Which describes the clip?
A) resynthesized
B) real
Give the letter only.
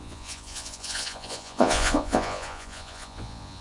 A